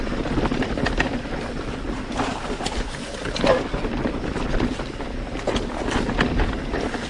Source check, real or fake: real